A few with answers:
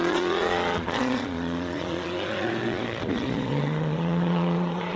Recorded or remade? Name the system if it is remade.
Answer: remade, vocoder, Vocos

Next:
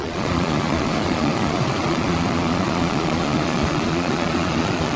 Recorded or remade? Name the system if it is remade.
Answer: remade, vocoder, Vocos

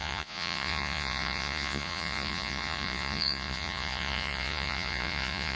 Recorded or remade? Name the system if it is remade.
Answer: remade, vocoder, Vocos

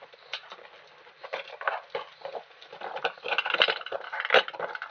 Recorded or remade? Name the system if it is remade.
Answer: recorded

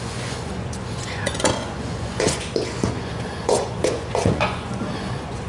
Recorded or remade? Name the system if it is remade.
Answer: remade, vocoder, Vocos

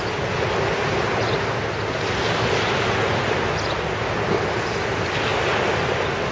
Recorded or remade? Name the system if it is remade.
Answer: recorded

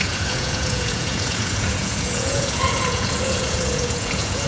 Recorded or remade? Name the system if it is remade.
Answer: remade, vocoder, Vocos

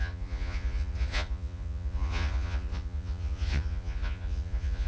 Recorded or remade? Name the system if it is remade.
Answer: remade, vocoder, Vocos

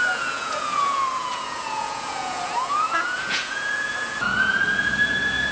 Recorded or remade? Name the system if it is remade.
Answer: remade, vocoder, Vocos